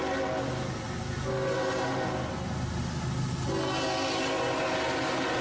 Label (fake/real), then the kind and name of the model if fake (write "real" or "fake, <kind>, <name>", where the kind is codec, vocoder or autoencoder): real